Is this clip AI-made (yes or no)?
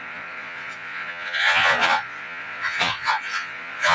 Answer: yes